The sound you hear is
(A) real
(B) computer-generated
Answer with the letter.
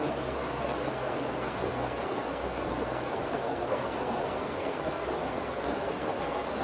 B